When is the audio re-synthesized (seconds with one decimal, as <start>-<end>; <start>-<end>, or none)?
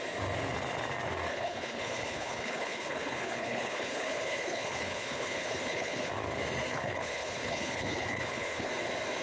1.3-6.1; 6.7-8.7